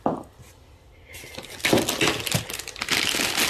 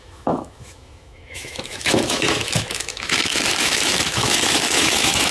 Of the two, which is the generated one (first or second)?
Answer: second